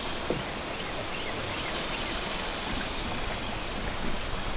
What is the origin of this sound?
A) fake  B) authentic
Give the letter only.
B